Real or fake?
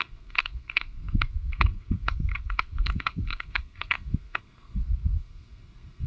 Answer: fake